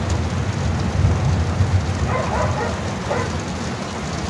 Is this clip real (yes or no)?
yes